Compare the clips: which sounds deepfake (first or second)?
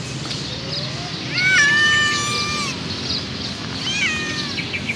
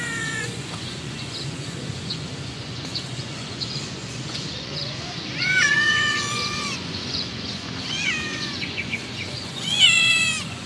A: second